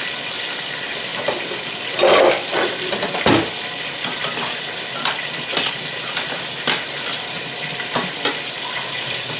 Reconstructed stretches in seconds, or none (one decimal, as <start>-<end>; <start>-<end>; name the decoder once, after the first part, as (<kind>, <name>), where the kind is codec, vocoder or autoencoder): none